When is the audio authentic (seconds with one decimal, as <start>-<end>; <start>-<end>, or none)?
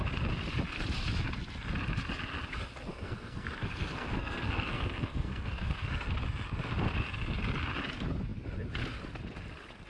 0.0-2.9; 5.9-9.9